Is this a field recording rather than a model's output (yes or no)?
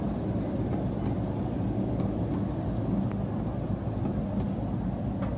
yes